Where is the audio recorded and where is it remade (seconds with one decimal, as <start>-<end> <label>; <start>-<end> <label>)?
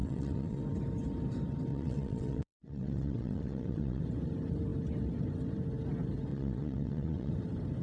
0.0-0.6 remade; 0.6-1.7 recorded; 1.7-4.0 remade; 4.0-6.3 recorded; 6.3-7.3 remade; 7.3-7.8 recorded